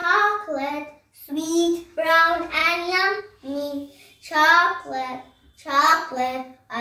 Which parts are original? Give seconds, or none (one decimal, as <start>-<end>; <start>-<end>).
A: 0.0-1.3; 4.1-5.8